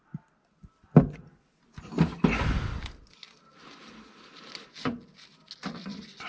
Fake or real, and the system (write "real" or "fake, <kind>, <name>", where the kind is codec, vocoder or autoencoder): real